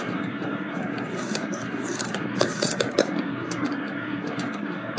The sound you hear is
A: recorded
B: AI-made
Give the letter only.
B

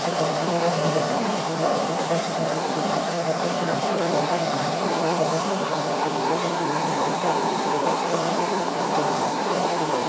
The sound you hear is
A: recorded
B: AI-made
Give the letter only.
B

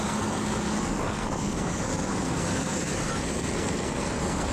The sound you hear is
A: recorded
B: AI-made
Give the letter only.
B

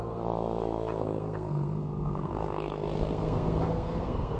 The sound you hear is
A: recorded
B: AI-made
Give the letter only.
B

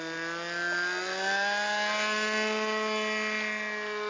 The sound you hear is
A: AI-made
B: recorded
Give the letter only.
B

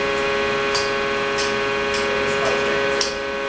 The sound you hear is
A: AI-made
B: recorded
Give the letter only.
B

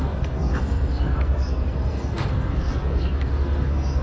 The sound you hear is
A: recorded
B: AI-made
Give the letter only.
B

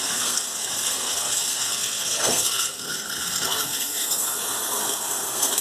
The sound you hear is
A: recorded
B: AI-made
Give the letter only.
B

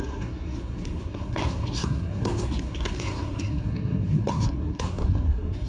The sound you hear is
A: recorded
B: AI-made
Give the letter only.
B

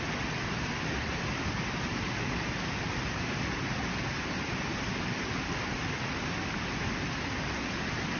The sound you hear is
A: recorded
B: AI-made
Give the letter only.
A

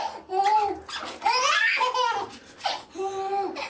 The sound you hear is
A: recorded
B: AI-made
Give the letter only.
A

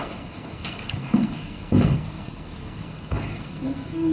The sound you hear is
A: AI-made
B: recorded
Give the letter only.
A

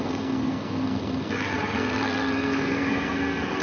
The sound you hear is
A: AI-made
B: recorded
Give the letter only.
A